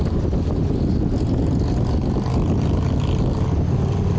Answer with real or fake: real